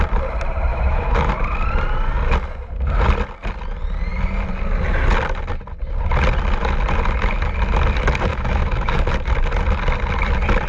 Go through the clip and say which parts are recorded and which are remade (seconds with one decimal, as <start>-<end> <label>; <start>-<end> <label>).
0.0-0.7 recorded; 0.7-1.3 remade; 1.3-8.3 recorded; 8.3-9.0 remade; 9.0-10.7 recorded